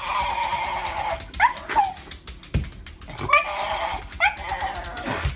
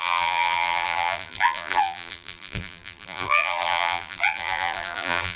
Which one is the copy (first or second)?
second